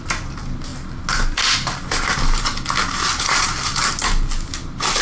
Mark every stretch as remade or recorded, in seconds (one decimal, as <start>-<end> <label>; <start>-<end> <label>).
0.0-5.0 recorded

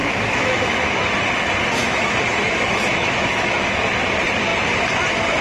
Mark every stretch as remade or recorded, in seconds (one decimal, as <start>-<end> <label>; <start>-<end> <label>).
0.0-1.1 remade; 1.1-1.8 recorded; 1.8-3.9 remade; 3.9-5.4 recorded

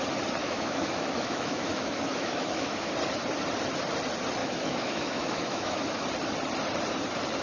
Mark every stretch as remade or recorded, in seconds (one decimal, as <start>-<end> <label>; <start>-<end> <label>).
0.0-0.4 recorded; 0.4-2.9 remade; 2.9-4.4 recorded; 4.4-6.0 remade; 6.0-7.4 recorded

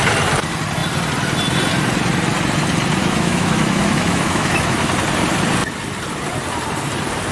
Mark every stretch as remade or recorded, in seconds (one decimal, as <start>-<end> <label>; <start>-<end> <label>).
0.0-3.0 recorded; 3.0-4.9 remade; 4.9-7.3 recorded

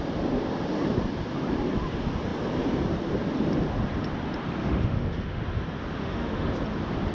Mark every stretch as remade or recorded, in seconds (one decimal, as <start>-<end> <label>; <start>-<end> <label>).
0.0-4.6 recorded; 4.6-5.4 remade; 5.4-6.0 recorded; 6.0-6.5 remade; 6.5-7.1 recorded

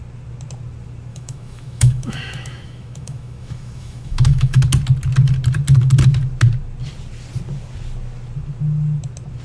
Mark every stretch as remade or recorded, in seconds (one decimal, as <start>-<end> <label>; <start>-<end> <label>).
0.0-1.1 recorded; 1.1-4.6 remade; 4.6-9.4 recorded